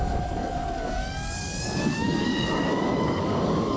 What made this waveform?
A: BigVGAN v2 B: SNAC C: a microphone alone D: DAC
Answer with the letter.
D